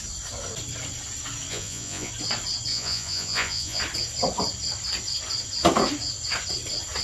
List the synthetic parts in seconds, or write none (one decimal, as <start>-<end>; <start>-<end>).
1.5-2.1; 2.7-3.8